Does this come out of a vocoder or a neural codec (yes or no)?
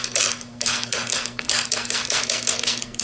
yes